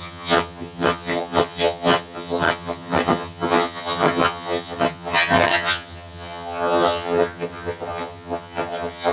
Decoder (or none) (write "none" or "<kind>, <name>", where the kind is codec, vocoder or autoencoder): vocoder, HiFi-GAN